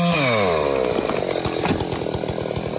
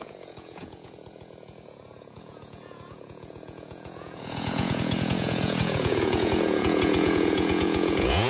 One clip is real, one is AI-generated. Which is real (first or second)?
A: first